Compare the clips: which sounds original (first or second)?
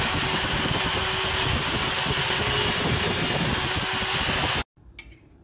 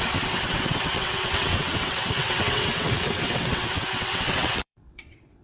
first